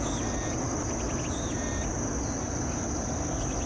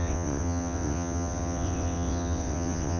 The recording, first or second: first